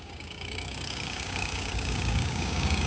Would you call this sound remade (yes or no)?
yes